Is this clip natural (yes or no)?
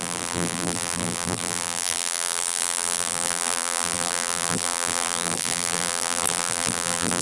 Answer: no